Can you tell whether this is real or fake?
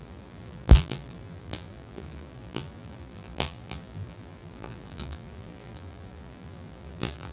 fake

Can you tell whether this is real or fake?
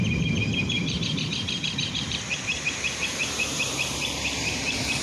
fake